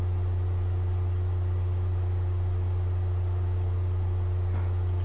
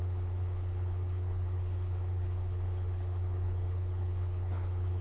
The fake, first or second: second